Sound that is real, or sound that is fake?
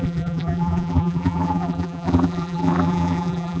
fake